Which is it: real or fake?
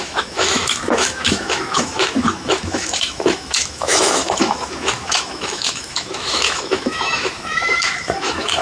fake